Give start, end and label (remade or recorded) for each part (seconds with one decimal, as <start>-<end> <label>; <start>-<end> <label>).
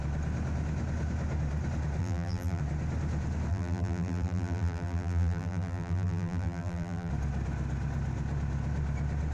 0.0-2.0 recorded; 2.0-2.6 remade; 2.6-3.5 recorded; 3.5-7.1 remade; 7.1-9.3 recorded